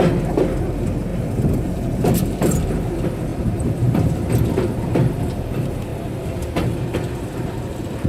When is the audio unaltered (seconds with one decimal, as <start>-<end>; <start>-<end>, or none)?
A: 0.0-1.1; 2.9-3.3; 4.1-8.1